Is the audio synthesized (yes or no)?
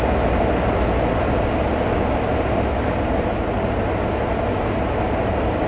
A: no